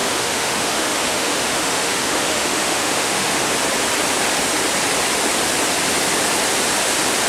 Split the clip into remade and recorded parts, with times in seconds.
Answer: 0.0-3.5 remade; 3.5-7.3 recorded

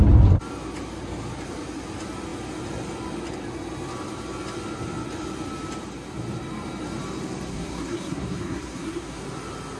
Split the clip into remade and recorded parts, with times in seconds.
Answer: 0.0-7.5 recorded; 7.5-9.2 remade; 9.2-9.8 recorded

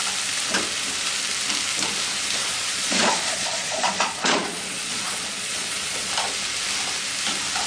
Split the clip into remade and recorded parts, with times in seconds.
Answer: 0.0-2.4 recorded; 2.4-6.1 remade; 6.1-7.7 recorded

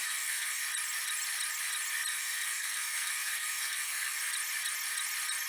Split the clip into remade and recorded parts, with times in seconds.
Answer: 0.0-0.6 remade; 0.6-2.1 recorded; 2.1-4.2 remade; 4.2-5.5 recorded

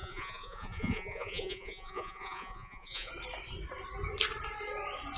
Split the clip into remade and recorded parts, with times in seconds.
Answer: 0.0-3.1 remade; 3.1-5.2 recorded

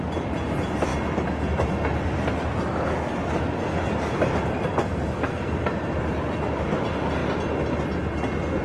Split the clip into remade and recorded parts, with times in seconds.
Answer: 0.0-4.8 recorded; 4.8-5.5 remade; 5.5-8.6 recorded